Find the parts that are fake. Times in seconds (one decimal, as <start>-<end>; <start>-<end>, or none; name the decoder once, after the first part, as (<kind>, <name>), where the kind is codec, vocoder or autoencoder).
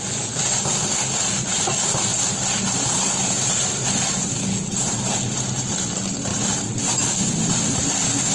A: 0.0-2.1 (vocoder, BigVGAN v2); 5.7-6.3; 7.8-8.3